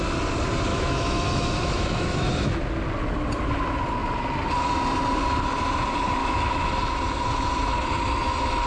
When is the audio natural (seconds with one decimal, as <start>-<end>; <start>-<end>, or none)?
0.0-0.7; 2.5-6.2; 6.7-8.7